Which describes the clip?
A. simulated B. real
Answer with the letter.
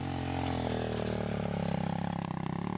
B